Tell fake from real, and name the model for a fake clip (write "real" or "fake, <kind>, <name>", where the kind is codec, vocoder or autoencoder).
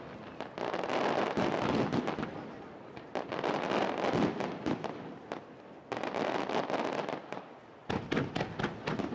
real